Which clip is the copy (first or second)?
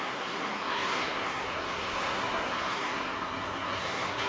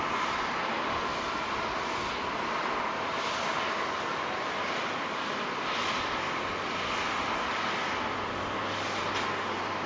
first